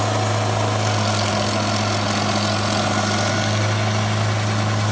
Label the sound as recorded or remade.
recorded